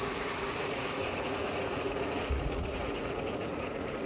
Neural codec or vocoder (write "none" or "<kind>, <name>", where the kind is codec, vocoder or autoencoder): vocoder, Vocos